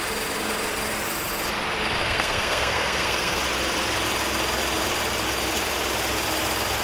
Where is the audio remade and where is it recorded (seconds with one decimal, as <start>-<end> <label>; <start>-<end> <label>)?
0.0-2.0 recorded; 2.0-3.4 remade; 3.4-6.8 recorded